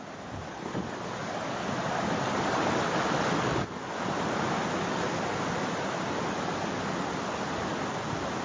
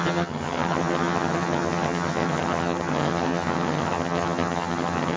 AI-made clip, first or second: second